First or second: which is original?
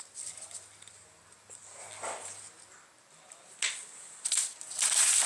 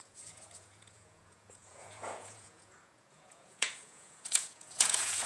first